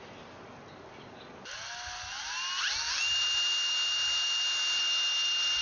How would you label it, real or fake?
real